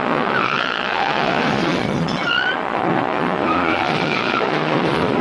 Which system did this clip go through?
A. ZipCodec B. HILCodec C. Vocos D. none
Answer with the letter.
C